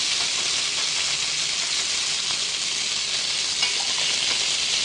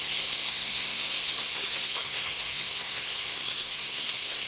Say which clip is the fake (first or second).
second